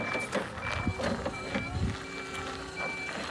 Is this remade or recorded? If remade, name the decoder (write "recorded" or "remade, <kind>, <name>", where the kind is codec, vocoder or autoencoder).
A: recorded